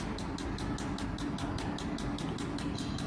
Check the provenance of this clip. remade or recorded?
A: recorded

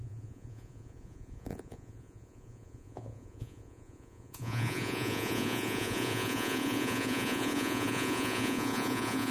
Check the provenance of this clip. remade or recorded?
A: remade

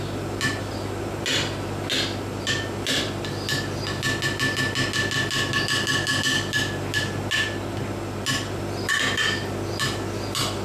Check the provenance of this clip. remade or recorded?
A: recorded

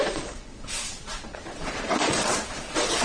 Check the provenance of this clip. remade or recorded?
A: remade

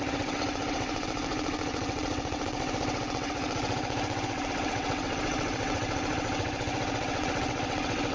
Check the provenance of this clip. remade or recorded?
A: remade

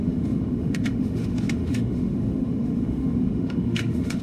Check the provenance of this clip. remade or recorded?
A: remade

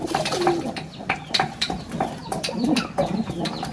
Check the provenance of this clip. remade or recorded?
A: recorded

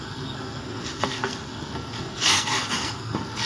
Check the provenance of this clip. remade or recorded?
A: remade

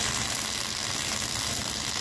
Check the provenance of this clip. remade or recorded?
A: recorded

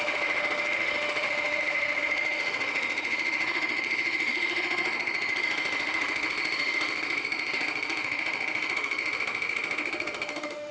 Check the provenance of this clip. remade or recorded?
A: remade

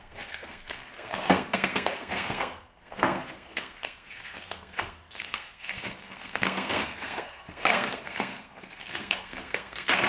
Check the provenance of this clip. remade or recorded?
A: remade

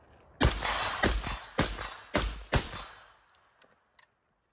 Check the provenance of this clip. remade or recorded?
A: recorded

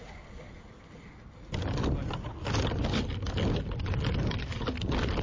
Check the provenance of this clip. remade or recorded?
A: recorded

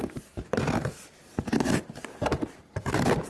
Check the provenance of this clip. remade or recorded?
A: remade